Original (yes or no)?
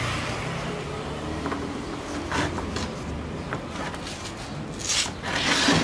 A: yes